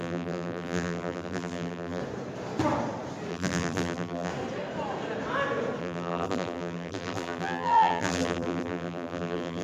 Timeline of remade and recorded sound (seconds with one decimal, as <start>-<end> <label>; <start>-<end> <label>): 0.0-2.0 remade; 2.0-3.3 recorded; 3.3-4.3 remade; 4.3-5.8 recorded; 5.8-9.6 remade